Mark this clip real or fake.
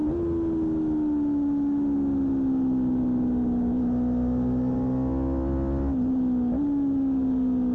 real